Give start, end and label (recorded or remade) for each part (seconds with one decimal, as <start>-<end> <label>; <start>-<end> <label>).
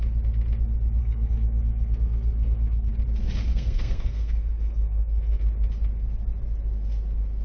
0.0-1.0 recorded; 1.0-2.9 remade; 2.9-3.5 recorded; 3.5-5.4 remade; 5.4-7.4 recorded